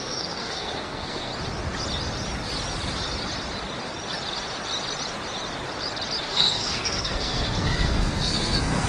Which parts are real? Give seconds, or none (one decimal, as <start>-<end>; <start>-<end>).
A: 1.3-6.2